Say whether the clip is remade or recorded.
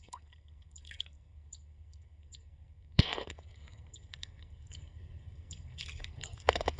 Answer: remade